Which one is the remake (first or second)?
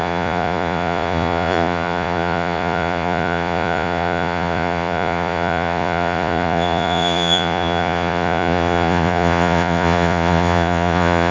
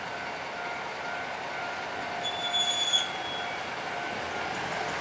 first